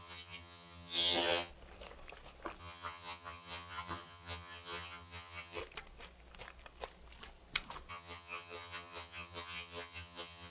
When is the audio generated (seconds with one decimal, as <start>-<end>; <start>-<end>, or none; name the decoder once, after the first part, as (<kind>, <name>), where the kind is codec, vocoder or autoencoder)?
0.0-1.5 (vocoder, HiFi-GAN); 2.6-5.6; 7.9-10.5